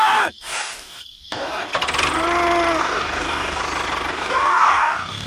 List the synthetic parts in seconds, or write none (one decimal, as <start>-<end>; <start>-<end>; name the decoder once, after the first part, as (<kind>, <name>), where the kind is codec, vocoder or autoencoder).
0.0-1.7 (codec, DAC); 2.8-3.6; 4.1-5.3